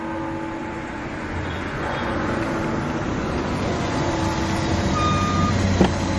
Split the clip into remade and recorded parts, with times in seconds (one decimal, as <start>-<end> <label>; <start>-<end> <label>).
0.0-0.6 recorded; 0.6-2.4 remade; 2.4-3.2 recorded; 3.2-4.1 remade; 4.1-6.2 recorded